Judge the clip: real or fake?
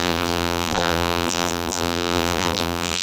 fake